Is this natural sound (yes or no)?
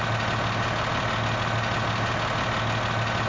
yes